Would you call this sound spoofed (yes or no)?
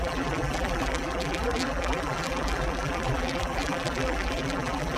yes